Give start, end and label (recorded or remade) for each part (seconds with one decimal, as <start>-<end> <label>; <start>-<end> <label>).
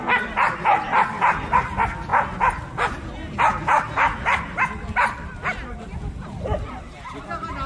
0.0-7.7 recorded